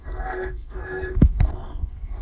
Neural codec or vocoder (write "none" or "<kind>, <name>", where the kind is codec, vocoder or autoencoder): codec, SNAC